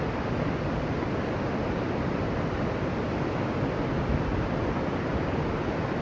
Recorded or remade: recorded